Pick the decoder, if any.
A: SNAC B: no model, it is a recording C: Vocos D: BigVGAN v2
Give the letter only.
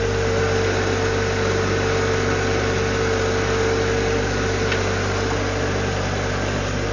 B